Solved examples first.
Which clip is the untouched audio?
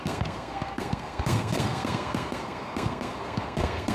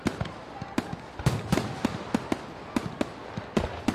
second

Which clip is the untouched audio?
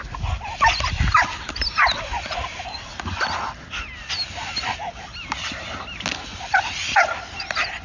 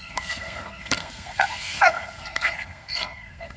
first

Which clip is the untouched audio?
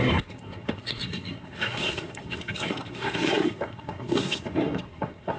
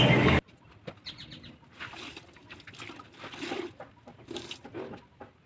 second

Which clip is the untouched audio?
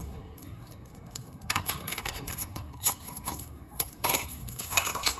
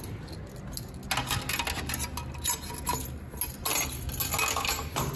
second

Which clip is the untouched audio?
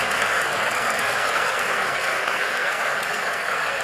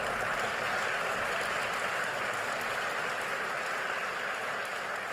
second